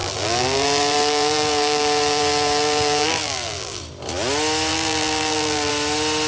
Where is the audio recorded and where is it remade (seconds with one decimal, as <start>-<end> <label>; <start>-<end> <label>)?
0.0-3.8 remade; 3.8-4.7 recorded; 4.7-5.7 remade; 5.7-6.3 recorded